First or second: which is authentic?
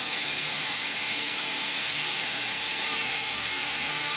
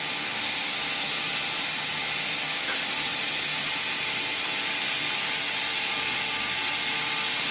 second